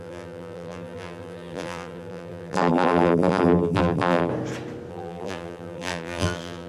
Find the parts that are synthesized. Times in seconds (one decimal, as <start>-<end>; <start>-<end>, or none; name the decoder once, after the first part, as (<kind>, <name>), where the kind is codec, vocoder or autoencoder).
0.0-4.3 (vocoder, BigVGAN v2); 4.9-6.7